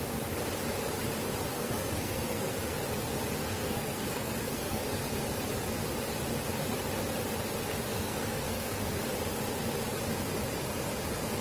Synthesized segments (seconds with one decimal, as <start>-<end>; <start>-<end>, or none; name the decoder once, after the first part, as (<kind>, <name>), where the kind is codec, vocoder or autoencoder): 1.5-2.8 (codec, SNAC); 3.4-5.1; 7.9-8.7